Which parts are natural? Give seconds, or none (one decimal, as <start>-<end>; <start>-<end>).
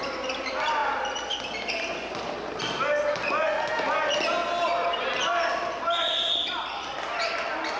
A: 0.0-7.8